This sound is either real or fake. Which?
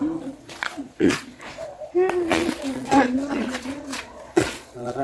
fake